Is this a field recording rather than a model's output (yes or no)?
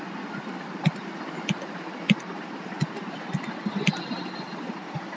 yes